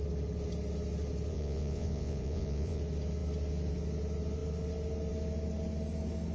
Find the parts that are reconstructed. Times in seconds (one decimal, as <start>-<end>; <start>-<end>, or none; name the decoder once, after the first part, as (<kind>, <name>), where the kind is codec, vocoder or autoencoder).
1.3-2.8 (vocoder, Vocos)